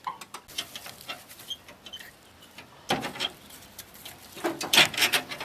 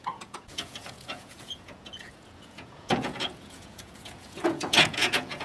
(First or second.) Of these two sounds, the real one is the first